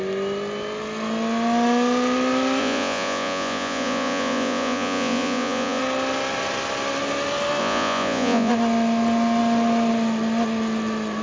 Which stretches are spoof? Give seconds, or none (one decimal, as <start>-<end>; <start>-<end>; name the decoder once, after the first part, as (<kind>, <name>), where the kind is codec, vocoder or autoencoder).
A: 2.6-5.8 (vocoder, Vocos); 7.6-8.5